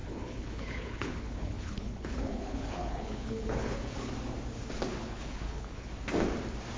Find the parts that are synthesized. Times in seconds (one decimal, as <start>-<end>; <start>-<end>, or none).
0.0-4.1; 5.0-5.9